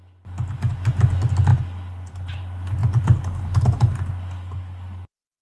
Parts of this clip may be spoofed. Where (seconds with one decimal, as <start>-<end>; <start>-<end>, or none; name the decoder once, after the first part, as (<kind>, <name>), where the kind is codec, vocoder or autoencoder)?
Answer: none